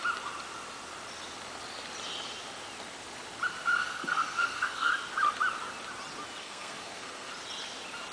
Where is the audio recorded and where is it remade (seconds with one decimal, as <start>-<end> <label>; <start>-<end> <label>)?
0.0-3.8 recorded; 3.8-4.9 remade; 4.9-6.4 recorded; 6.4-7.3 remade; 7.3-8.1 recorded